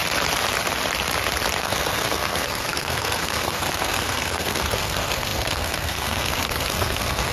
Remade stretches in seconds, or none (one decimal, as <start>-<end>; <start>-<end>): 1.6-7.3